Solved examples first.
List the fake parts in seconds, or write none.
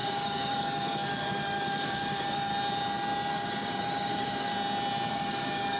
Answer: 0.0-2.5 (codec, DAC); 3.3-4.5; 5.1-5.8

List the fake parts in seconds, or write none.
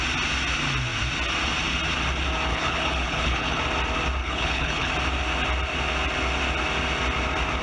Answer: 2.5-3.6 (codec, HILCodec); 4.2-4.9